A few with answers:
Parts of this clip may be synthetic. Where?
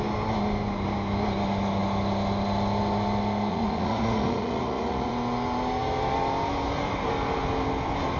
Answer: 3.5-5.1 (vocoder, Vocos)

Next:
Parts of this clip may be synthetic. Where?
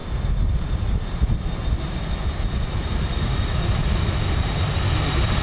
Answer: none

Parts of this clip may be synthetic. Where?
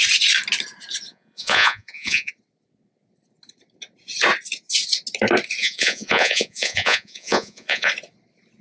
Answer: 1.1-2.3 (vocoder, Vocos); 5.6-7.9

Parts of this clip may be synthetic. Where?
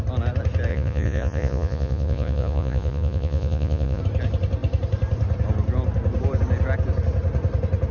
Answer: 0.7-4.0 (vocoder, Vocos)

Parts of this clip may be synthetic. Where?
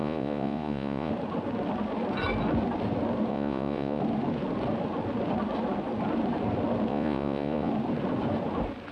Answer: 0.0-1.1 (vocoder, Vocos); 3.3-4.0; 6.9-7.7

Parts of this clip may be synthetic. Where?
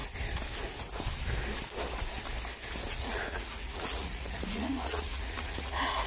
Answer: 2.9-6.1 (vocoder, Vocos)